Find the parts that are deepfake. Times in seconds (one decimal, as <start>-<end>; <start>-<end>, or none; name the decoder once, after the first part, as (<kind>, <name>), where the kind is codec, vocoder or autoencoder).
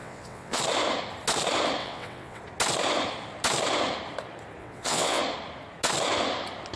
0.0-0.6 (vocoder, WaveNeXt); 1.8-2.4; 4.6-5.2